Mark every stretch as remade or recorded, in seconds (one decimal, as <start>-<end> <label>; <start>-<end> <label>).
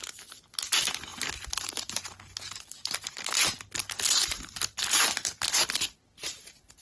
0.0-6.8 recorded